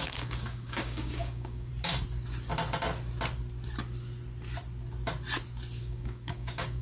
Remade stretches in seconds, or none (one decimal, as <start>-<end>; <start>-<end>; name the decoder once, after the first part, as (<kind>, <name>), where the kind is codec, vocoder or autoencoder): 0.0-1.7 (codec, DAC); 5.8-6.8